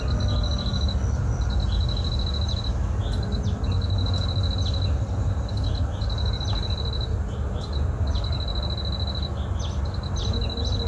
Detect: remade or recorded recorded